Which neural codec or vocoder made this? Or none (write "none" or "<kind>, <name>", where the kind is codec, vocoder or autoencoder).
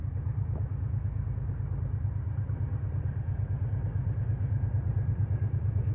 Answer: none